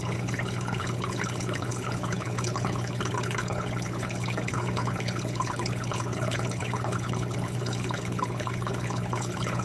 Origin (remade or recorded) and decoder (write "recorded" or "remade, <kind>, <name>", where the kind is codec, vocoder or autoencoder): remade, codec, HILCodec